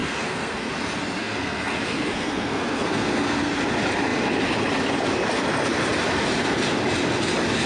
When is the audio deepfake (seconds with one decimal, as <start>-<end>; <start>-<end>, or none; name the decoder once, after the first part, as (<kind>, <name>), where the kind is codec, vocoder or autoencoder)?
0.0-0.7 (codec, SNAC); 1.2-3.5